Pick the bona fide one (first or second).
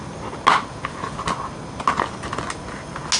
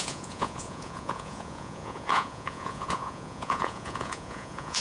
first